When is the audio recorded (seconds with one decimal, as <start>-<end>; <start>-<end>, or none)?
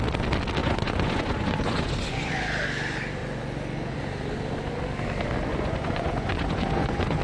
0.0-0.6; 2.3-3.2; 4.0-5.5